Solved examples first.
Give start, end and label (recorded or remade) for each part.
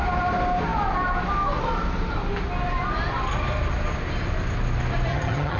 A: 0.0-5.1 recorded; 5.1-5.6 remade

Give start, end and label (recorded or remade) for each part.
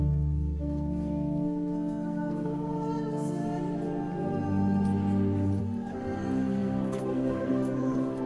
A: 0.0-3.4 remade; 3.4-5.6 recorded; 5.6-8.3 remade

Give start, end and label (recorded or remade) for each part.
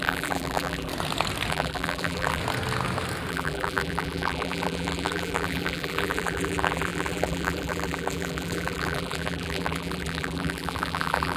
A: 0.0-0.9 remade; 0.9-1.5 recorded; 1.5-2.4 remade; 2.4-3.3 recorded; 3.3-11.4 remade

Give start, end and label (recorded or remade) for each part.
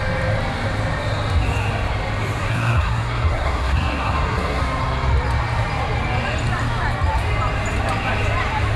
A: 0.0-2.4 recorded; 2.4-4.6 remade; 4.6-8.8 recorded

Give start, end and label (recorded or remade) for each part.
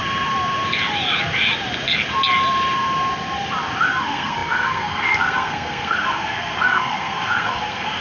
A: 0.0-4.0 recorded; 4.0-8.0 remade